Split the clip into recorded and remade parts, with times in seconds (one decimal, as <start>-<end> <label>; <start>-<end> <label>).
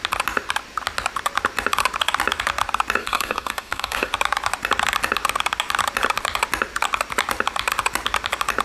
0.0-3.0 recorded; 3.0-4.1 remade; 4.1-8.6 recorded